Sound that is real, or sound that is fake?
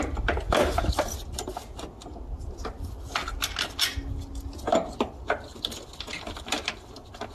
real